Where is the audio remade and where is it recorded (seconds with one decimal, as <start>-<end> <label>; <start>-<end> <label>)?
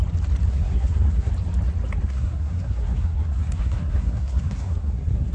0.0-0.5 recorded; 0.5-1.3 remade; 1.3-2.0 recorded; 2.0-5.3 remade